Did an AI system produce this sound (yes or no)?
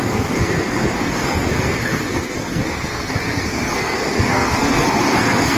yes